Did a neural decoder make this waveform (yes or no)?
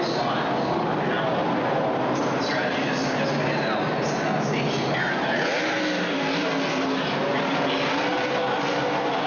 no